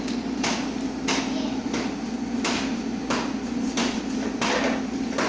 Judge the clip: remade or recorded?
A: recorded